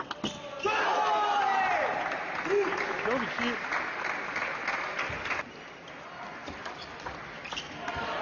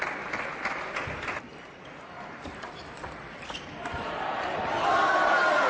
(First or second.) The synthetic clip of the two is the second